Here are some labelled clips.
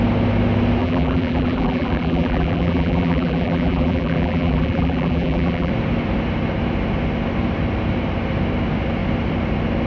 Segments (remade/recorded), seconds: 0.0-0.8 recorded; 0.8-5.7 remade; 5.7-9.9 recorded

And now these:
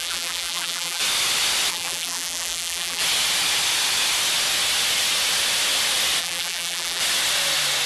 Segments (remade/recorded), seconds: 0.0-1.0 remade; 1.0-1.7 recorded; 1.7-3.0 remade; 3.0-6.2 recorded; 6.2-7.0 remade; 7.0-7.9 recorded

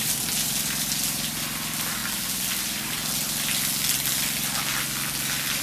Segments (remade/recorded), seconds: 0.0-5.6 recorded

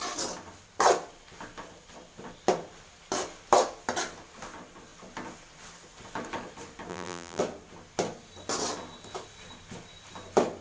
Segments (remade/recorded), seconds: 0.0-6.9 recorded; 6.9-7.4 remade; 7.4-10.6 recorded

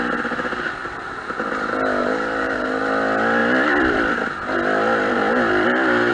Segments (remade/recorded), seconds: 0.0-0.8 recorded; 0.8-1.5 remade; 1.5-2.0 recorded; 2.0-2.8 remade; 2.8-6.1 recorded

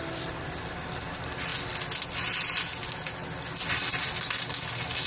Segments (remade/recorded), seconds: 0.0-5.1 recorded